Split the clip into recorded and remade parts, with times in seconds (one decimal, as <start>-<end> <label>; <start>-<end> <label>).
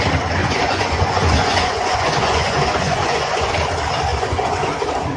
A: 0.0-0.4 recorded; 0.4-3.5 remade; 3.5-4.1 recorded; 4.1-4.7 remade; 4.7-5.2 recorded